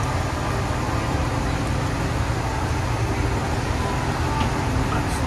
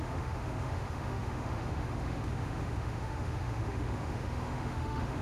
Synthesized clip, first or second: second